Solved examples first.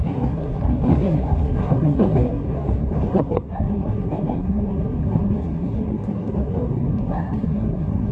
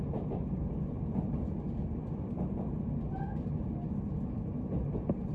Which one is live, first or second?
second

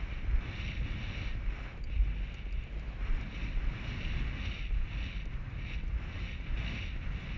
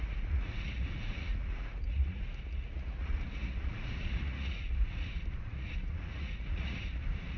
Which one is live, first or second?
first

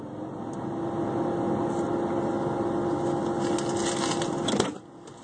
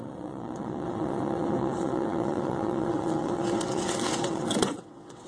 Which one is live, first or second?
first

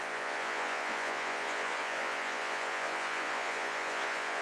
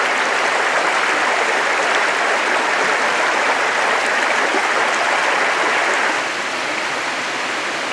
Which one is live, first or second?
second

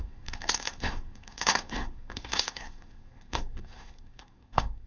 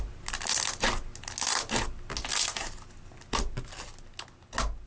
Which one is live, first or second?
second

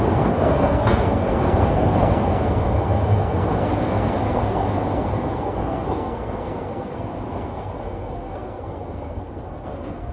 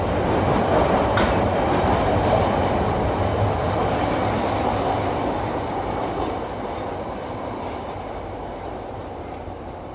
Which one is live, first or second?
second